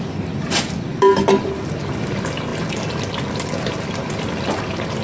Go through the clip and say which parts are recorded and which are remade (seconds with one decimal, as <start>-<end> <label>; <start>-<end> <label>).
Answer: 0.0-5.0 recorded